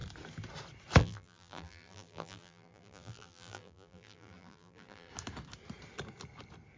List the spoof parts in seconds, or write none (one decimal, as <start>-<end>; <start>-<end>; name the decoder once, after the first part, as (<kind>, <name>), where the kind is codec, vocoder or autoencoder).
1.0-5.1 (vocoder, BigVGAN v2)